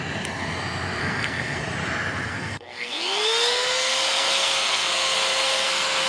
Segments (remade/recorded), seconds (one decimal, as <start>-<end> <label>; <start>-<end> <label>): 0.0-1.0 recorded; 1.0-1.6 remade; 1.6-2.3 recorded; 2.3-6.1 remade